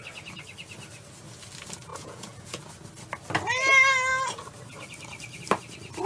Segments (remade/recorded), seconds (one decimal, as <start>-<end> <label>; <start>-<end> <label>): 0.0-1.9 recorded; 1.9-2.6 remade; 2.6-6.1 recorded